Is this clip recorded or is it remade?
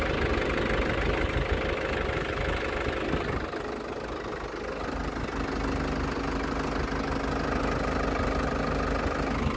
recorded